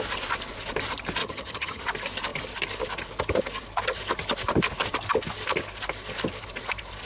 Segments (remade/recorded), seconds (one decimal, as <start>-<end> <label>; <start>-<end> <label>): 0.0-1.2 recorded; 1.2-1.8 remade; 1.8-7.1 recorded